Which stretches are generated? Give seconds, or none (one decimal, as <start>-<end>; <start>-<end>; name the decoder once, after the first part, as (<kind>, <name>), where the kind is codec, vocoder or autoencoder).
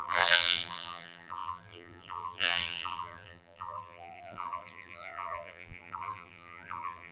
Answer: 0.0-7.1 (vocoder, BigVGAN v2)